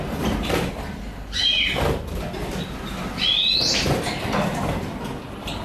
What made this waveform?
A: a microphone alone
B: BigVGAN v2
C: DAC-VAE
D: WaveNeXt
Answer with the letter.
A